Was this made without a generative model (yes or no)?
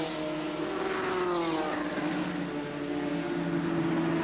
yes